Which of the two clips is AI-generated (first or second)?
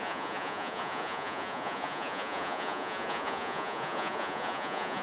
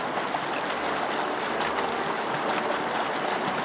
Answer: first